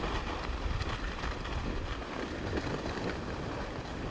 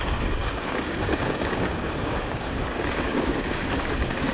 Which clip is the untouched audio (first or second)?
first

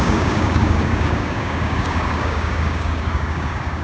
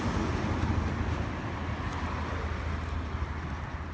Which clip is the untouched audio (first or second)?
second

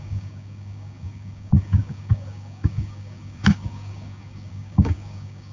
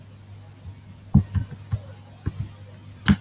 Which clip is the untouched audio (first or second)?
second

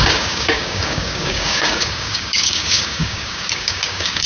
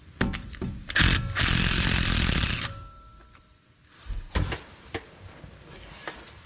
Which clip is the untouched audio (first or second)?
second